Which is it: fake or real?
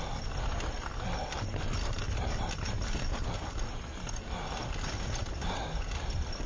real